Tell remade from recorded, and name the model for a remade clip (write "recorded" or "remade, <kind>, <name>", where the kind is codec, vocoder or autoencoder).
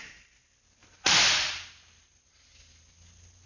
recorded